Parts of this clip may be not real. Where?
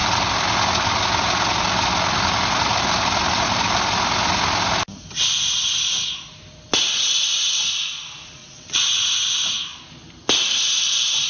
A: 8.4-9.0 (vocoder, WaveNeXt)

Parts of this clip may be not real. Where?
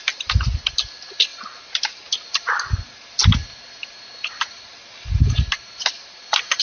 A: none